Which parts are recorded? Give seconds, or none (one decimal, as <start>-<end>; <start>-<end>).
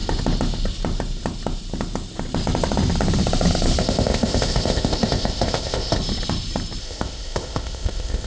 0.0-3.8; 6.0-6.8